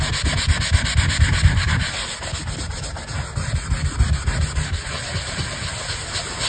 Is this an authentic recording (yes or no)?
yes